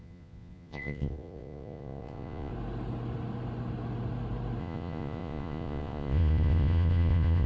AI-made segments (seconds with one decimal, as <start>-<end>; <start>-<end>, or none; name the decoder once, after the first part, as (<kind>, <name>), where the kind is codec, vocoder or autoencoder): 0.0-2.5 (vocoder, Vocos); 4.6-7.5